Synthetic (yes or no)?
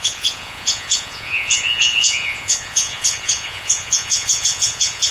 yes